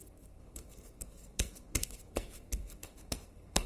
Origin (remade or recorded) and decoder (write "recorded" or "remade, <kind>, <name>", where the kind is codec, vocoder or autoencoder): remade, codec, SNAC